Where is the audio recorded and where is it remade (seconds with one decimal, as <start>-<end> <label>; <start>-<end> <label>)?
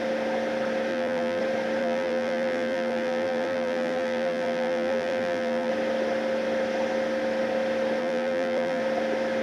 0.0-0.9 recorded; 0.9-1.4 remade; 1.4-1.8 recorded; 1.8-5.7 remade; 5.7-8.0 recorded; 8.0-8.8 remade; 8.8-9.4 recorded